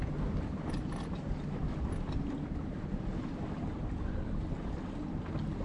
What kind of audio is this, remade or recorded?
recorded